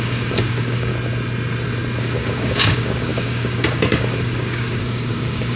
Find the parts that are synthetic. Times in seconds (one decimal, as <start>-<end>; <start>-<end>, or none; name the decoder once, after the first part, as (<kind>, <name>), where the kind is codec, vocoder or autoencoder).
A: 0.0-0.9 (codec, DAC); 2.0-5.6